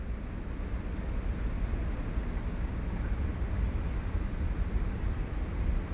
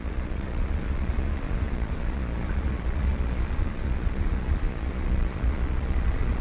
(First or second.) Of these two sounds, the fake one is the second